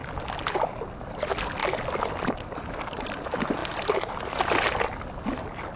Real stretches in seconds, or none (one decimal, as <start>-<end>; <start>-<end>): 0.0-5.8